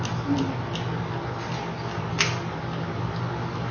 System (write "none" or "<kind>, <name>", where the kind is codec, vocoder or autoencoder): none